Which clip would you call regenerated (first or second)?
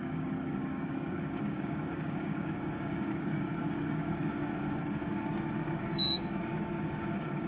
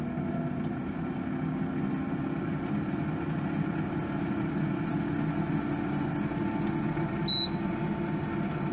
first